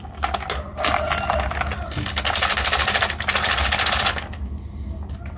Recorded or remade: recorded